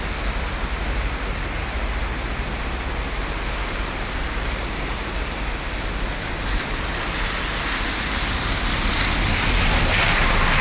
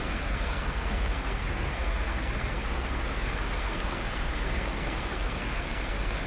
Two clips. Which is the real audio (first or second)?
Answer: first